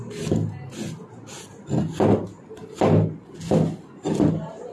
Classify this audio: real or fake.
real